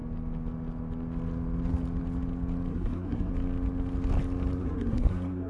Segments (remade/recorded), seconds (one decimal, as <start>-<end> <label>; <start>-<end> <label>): 0.0-2.7 recorded; 2.7-3.3 remade; 3.3-4.6 recorded; 4.6-5.5 remade